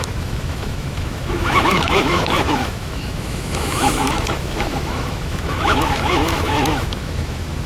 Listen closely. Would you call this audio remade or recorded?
remade